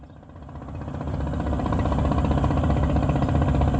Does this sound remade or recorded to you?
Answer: recorded